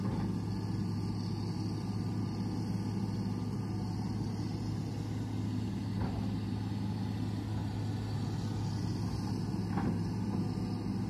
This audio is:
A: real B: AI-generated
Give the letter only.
A